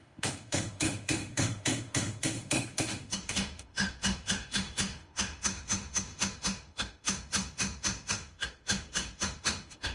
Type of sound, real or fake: fake